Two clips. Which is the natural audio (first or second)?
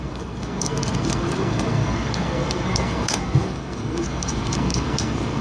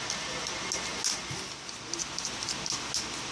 second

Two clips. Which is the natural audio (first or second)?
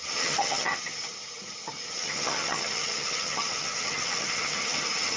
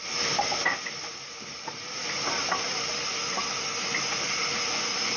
second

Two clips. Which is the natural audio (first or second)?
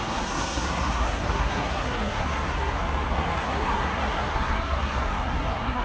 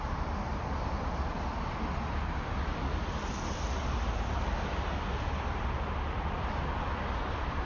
second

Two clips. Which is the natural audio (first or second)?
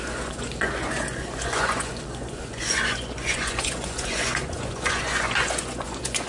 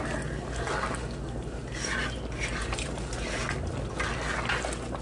second